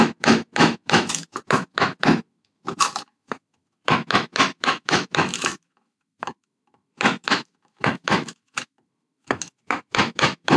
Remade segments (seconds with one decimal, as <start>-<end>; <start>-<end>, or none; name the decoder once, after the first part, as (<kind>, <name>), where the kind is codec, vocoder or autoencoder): 0.0-10.6 (autoencoder, DAC-VAE)